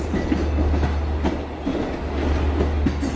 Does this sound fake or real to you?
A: real